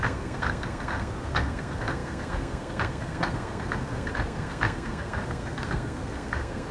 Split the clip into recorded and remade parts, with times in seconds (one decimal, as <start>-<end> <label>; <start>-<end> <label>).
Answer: 0.0-6.7 remade

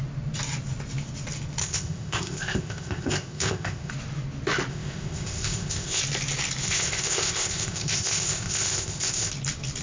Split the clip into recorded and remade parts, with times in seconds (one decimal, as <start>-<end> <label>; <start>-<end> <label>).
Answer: 0.0-1.6 recorded; 1.6-3.9 remade; 3.9-4.7 recorded; 4.7-6.0 remade; 6.0-6.6 recorded; 6.6-9.3 remade; 9.3-9.8 recorded